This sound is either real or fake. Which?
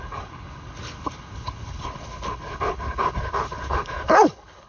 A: fake